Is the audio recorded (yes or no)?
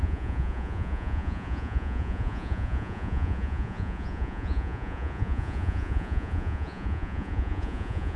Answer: no